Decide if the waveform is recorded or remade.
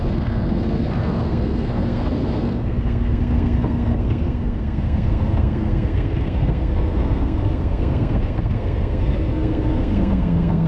remade